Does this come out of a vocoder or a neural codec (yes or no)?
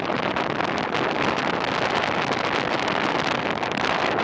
no